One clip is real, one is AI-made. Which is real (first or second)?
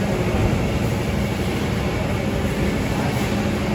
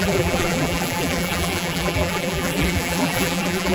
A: first